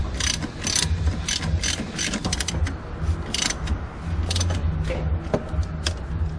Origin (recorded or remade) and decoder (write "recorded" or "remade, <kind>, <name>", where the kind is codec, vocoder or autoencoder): recorded